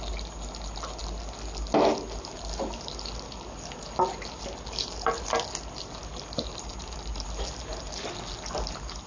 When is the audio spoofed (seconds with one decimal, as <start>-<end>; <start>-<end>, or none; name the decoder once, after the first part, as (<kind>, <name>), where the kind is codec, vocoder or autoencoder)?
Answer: none